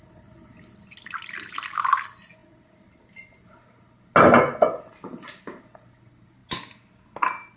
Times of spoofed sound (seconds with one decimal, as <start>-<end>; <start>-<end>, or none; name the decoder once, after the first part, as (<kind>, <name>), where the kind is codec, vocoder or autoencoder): none